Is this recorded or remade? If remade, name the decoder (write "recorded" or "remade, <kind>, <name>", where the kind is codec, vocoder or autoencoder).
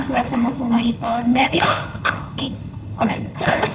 remade, codec, HILCodec